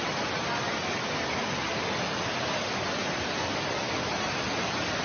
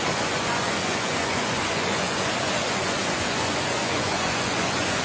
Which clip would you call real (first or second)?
first